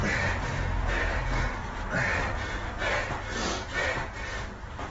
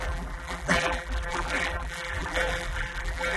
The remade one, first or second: second